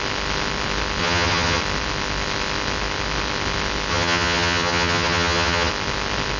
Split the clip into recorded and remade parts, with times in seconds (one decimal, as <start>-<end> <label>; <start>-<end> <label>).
0.0-1.0 recorded; 1.0-1.6 remade; 1.6-3.9 recorded; 3.9-5.7 remade; 5.7-6.4 recorded